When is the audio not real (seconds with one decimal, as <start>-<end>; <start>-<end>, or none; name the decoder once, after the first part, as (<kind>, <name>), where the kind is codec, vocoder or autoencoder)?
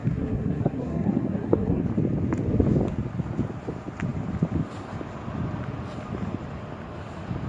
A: 0.0-1.8 (codec, SNAC)